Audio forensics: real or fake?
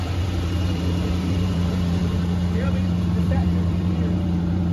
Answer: fake